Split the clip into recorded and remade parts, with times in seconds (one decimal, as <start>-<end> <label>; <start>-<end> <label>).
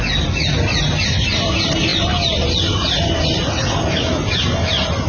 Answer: 0.0-5.1 recorded